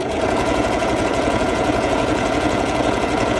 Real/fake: fake